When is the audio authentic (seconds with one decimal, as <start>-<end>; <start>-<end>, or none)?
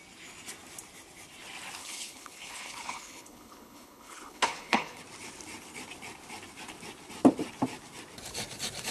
0.0-1.8; 5.0-8.9